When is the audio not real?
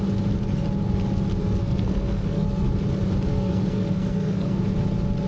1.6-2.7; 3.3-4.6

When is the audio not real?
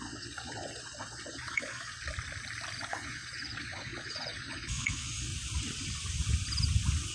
0.0-1.9; 2.9-5.3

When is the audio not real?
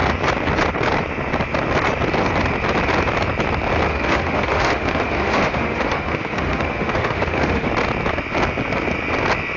3.9-7.7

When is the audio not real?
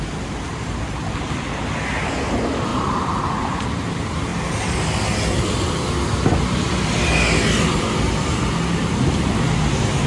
2.7-3.9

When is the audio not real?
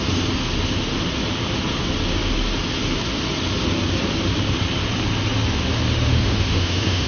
6.1-7.1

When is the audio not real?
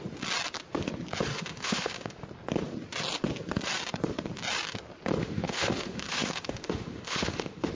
1.3-2.2; 5.2-7.7